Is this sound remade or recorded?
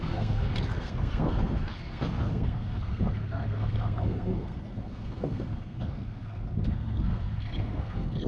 remade